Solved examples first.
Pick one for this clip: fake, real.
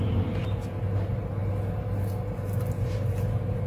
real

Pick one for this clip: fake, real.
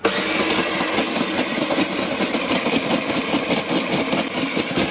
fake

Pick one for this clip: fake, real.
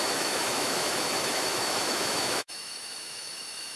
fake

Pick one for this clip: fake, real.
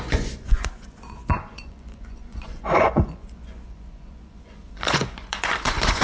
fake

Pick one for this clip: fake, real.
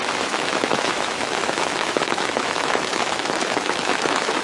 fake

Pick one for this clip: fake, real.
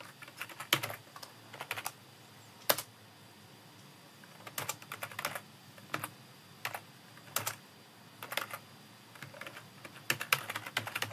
real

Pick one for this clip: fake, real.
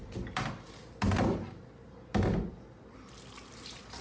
real